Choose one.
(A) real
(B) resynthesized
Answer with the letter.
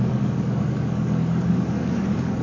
B